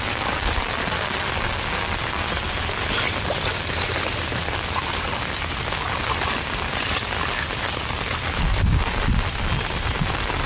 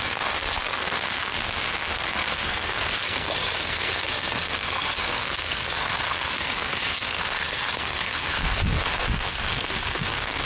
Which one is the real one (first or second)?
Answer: first